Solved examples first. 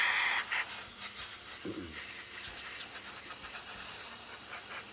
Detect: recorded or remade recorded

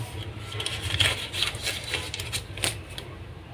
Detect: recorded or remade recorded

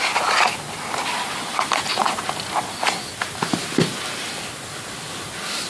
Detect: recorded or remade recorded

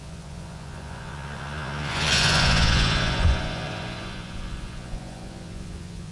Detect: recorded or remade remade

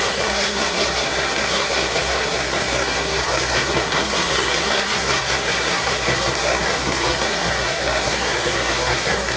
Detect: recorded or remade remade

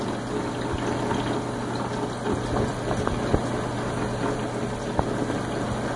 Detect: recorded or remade recorded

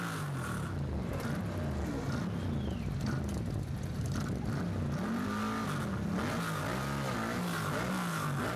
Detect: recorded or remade recorded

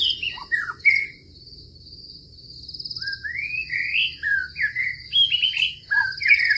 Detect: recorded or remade recorded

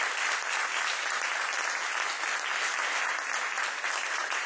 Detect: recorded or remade recorded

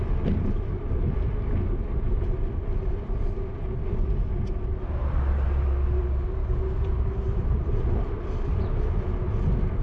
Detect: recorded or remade recorded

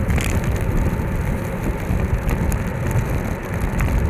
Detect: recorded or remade recorded